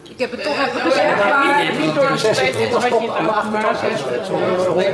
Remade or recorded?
remade